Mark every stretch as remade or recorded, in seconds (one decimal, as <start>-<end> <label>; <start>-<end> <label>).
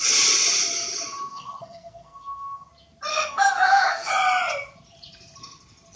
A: 0.0-1.3 recorded; 1.3-2.7 remade; 2.7-3.1 recorded; 3.1-4.1 remade; 4.1-6.0 recorded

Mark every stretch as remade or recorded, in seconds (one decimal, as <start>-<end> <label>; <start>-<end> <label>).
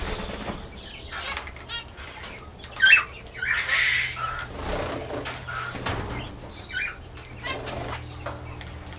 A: 0.0-9.0 recorded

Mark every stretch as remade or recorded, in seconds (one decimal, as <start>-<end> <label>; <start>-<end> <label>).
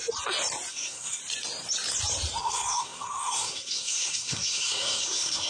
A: 0.0-0.7 recorded; 0.7-1.2 remade; 1.2-2.4 recorded; 2.4-5.5 remade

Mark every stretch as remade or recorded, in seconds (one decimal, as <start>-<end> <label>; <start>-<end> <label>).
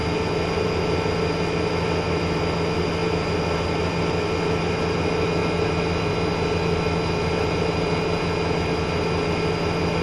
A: 0.0-10.0 recorded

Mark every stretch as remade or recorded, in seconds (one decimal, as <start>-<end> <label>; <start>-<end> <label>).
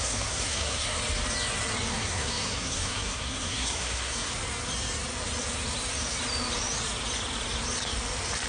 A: 0.0-1.0 remade; 1.0-1.9 recorded; 1.9-4.3 remade; 4.3-8.5 recorded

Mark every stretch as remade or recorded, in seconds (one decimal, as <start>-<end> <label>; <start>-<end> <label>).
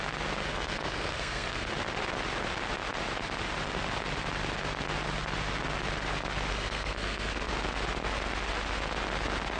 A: 0.0-0.4 recorded; 0.4-1.7 remade; 1.7-6.5 recorded; 6.5-7.5 remade; 7.5-9.6 recorded